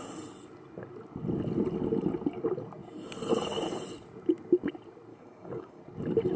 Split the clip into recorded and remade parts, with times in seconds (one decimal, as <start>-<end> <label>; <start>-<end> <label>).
0.0-5.1 recorded; 5.1-5.8 remade; 5.8-6.4 recorded